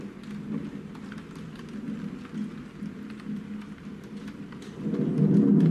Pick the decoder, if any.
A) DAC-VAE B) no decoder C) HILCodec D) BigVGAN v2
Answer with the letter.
B